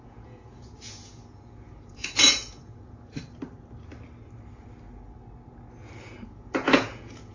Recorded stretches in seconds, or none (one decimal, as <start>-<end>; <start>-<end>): 3.1-6.0